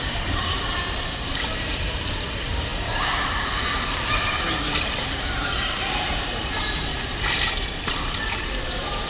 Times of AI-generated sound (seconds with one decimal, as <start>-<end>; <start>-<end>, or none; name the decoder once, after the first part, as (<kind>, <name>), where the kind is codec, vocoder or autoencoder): 0.0-6.9 (vocoder, BigVGAN v2); 7.6-9.1